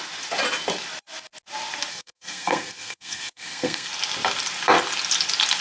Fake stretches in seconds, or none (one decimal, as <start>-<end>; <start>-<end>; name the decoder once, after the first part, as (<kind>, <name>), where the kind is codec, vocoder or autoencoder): 1.9-3.9 (codec, SNAC)